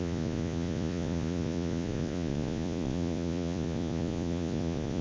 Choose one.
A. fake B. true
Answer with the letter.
A